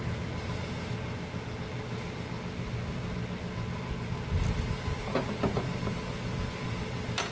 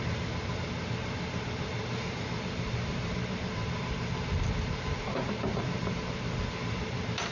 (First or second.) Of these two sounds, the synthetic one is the second